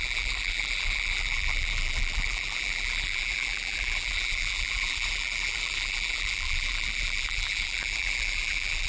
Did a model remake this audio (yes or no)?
yes